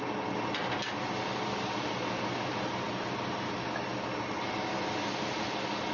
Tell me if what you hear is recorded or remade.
recorded